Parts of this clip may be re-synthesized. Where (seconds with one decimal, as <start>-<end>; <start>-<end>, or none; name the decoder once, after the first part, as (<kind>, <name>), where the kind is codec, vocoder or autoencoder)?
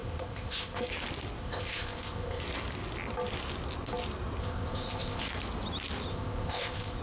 0.0-0.8 (codec, ZipCodec); 1.4-2.4; 4.4-5.2; 6.1-7.0